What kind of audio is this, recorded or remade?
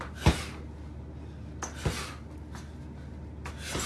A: recorded